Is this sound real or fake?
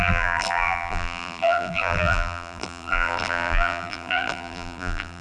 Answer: fake